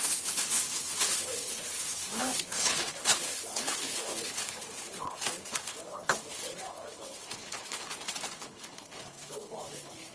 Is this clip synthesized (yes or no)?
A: yes